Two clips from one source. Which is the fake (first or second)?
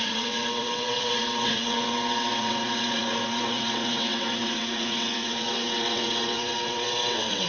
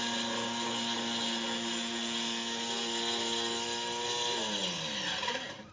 first